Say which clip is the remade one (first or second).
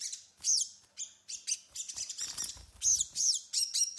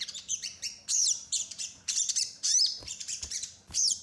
second